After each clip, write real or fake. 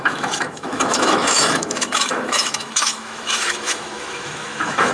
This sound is fake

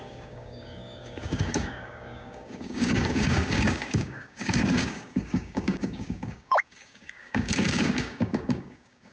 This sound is fake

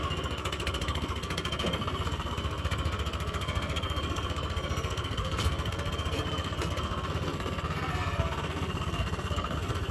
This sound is fake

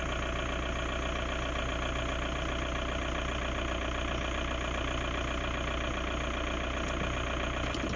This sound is real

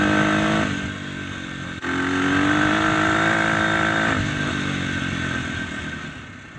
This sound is real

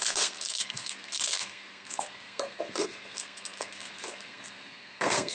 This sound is fake